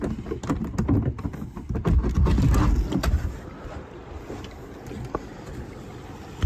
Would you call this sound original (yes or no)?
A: yes